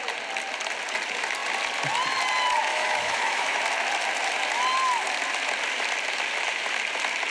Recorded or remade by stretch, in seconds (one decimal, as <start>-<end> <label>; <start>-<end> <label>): 0.0-2.7 recorded; 2.7-3.6 remade; 3.6-7.3 recorded